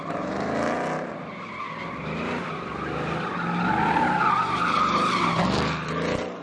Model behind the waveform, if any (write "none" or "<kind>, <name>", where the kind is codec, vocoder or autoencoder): none